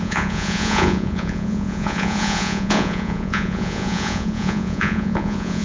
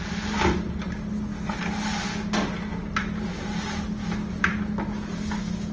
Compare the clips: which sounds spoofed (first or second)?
first